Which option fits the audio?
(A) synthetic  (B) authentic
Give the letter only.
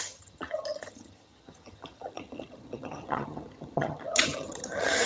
A